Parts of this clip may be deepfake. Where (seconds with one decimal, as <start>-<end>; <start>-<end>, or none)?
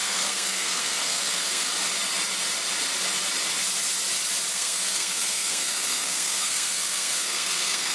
0.0-1.7; 4.5-7.9